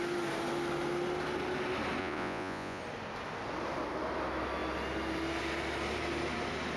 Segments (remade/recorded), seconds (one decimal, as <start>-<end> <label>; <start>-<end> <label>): 0.0-2.0 recorded; 2.0-2.8 remade; 2.8-6.8 recorded